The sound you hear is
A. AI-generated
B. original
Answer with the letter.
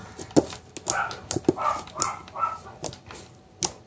B